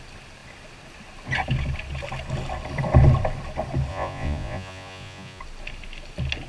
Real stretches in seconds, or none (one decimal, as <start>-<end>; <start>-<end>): 0.0-3.9; 5.4-6.5